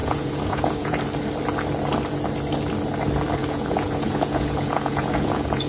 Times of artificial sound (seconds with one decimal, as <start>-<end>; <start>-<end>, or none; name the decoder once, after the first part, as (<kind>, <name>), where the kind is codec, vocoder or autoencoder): 0.0-1.0 (vocoder, Vocos); 3.4-5.7